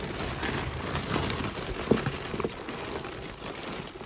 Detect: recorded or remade recorded